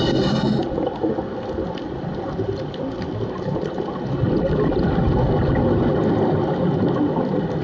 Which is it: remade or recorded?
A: recorded